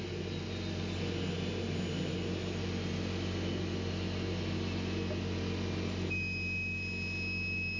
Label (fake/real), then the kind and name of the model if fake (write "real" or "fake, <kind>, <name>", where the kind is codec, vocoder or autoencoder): real